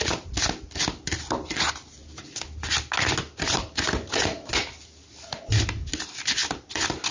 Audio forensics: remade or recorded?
recorded